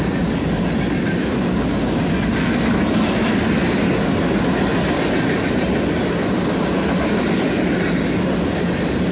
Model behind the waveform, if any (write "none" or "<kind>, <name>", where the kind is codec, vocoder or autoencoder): none